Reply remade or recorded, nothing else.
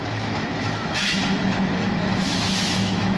remade